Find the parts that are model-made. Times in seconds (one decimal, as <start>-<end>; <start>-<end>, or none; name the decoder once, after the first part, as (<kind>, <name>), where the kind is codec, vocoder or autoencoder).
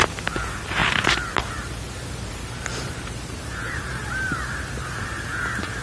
2.3-4.0 (vocoder, BigVGAN v2)